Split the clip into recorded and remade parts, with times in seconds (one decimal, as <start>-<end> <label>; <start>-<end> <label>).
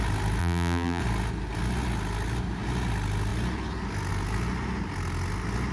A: 0.0-0.4 recorded; 0.4-1.0 remade; 1.0-5.7 recorded